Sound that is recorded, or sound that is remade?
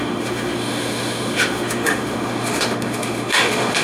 remade